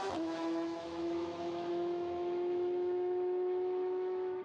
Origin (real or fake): fake